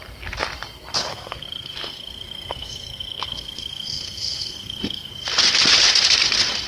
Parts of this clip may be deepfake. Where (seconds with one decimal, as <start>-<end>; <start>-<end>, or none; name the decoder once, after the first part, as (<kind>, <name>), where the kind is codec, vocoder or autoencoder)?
1.1-5.1 (codec, SNAC)

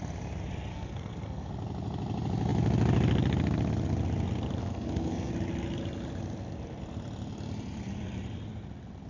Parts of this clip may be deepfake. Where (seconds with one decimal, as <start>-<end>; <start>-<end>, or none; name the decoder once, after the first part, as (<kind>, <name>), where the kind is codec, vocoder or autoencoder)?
0.7-1.5 (codec, SNAC); 4.6-5.3

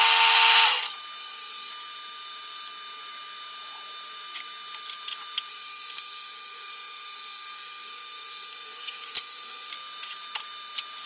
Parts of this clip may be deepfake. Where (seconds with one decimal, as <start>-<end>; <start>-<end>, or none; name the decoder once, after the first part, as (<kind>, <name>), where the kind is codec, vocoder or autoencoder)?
1.2-1.7 (codec, SNAC); 5.5-9.7